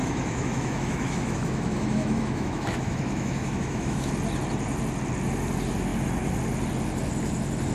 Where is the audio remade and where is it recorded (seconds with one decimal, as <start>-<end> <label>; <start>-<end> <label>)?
0.0-4.1 remade; 4.1-7.7 recorded